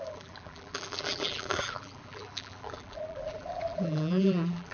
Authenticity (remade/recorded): remade